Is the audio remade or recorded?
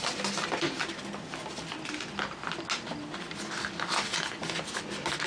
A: recorded